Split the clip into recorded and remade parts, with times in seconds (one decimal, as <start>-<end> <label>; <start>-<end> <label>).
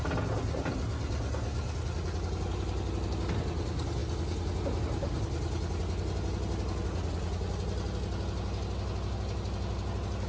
0.0-10.3 recorded